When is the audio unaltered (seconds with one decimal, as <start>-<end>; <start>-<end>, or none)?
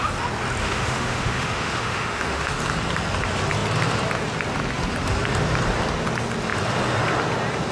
0.0-0.6; 2.5-7.7